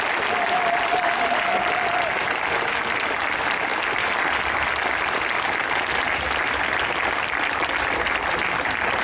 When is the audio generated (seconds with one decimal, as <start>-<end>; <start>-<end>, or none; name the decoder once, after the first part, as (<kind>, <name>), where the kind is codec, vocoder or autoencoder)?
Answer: none